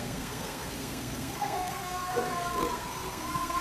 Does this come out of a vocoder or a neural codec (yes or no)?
yes